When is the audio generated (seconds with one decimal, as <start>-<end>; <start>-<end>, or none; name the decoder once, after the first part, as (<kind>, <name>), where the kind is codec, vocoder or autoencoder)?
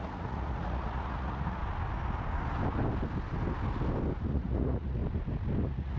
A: 0.0-1.6 (vocoder, Vocos); 4.3-5.0; 5.6-6.0